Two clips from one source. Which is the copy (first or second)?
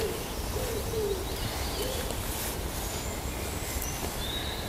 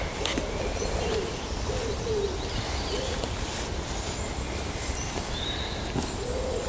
second